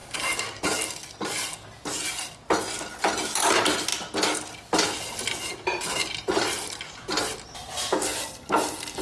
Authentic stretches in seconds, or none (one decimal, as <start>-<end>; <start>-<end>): 0.6-6.0; 6.7-9.0